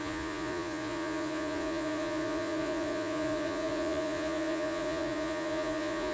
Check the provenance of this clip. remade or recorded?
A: remade